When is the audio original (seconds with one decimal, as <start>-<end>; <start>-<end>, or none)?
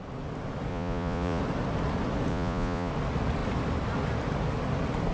0.0-0.7; 1.4-2.3; 2.9-5.1